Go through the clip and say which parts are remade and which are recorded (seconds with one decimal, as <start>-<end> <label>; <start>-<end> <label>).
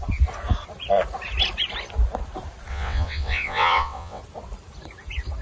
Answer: 0.0-2.7 recorded; 2.7-4.2 remade; 4.2-5.4 recorded